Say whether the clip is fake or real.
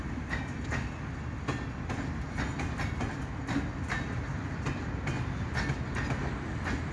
real